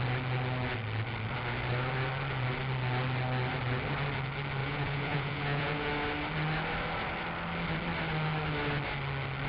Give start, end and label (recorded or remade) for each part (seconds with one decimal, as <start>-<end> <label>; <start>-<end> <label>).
0.0-4.6 recorded; 4.6-5.9 remade; 5.9-9.5 recorded